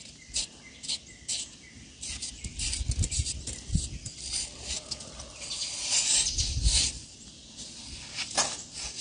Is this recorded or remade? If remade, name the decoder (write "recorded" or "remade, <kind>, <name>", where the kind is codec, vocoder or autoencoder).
recorded